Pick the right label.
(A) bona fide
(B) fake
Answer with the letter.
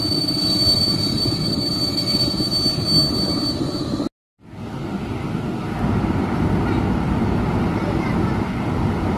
A